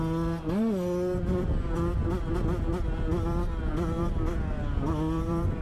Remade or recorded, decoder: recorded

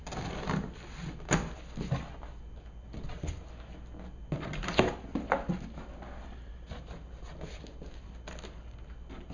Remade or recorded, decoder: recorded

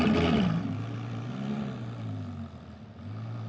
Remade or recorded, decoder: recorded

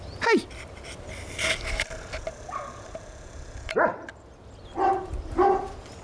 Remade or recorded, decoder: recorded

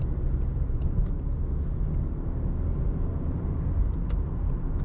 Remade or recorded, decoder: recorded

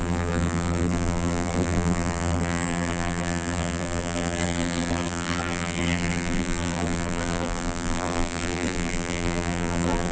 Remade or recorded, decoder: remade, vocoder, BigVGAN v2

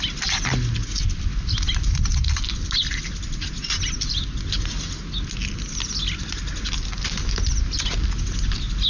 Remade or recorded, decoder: recorded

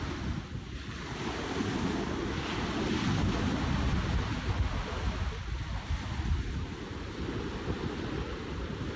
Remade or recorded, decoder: recorded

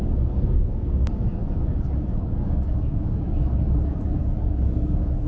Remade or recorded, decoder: remade, codec, DAC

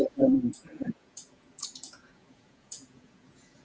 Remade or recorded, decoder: remade, vocoder, Vocos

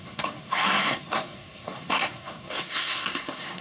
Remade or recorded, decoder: remade, codec, SNAC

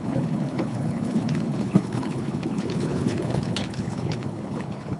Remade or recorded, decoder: remade, codec, HILCodec